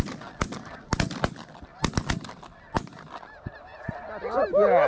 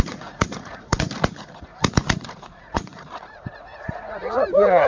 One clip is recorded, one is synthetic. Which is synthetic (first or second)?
second